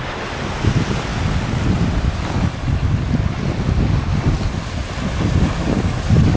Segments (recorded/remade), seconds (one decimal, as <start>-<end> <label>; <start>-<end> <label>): 0.0-6.4 recorded